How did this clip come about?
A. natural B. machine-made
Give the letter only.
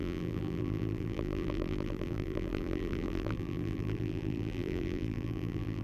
B